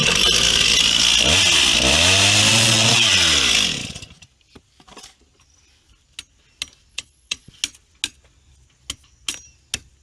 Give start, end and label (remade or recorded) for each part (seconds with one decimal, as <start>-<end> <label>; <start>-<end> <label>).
0.0-2.5 recorded; 2.5-3.2 remade; 3.2-6.9 recorded; 6.9-7.5 remade; 7.5-10.0 recorded